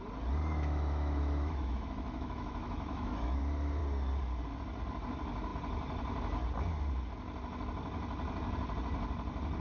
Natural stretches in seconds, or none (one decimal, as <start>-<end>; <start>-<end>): 0.0-0.4; 3.4-9.6